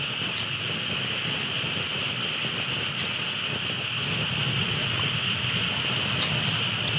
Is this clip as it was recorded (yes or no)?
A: yes